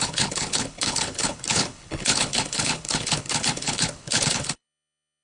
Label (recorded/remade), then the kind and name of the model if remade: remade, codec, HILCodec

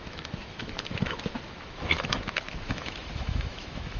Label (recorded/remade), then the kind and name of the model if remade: remade, autoencoder, DAC-VAE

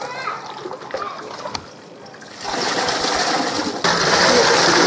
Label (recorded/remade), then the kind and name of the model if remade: recorded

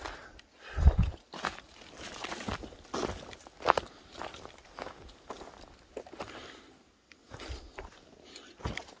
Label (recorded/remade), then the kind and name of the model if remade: recorded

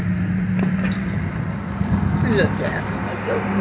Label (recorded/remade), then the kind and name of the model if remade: recorded